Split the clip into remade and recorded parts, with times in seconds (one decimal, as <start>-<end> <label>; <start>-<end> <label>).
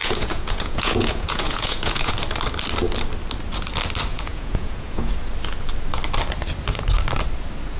0.0-2.1 remade; 2.1-4.1 recorded; 4.1-5.1 remade; 5.1-7.8 recorded